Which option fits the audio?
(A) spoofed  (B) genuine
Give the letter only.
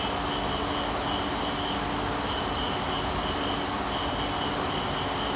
B